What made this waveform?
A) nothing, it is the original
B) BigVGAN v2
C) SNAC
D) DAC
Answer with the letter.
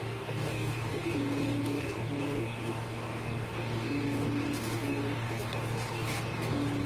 D